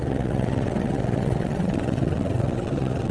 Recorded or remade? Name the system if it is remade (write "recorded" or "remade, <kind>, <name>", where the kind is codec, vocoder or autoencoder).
remade, vocoder, WaveNeXt